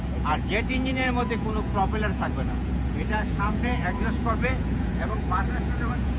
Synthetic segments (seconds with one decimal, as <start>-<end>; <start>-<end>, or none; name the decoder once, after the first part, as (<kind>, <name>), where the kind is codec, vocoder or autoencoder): 0.0-6.2 (vocoder, Vocos)